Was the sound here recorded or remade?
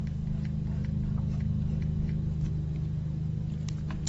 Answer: recorded